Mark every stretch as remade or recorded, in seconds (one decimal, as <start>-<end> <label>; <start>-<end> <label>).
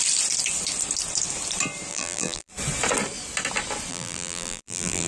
0.0-1.9 recorded; 1.9-2.5 remade; 2.5-3.9 recorded; 3.9-5.1 remade